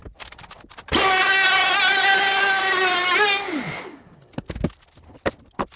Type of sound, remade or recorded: recorded